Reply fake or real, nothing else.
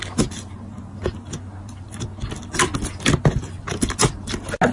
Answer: real